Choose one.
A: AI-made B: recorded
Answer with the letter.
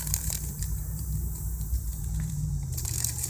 A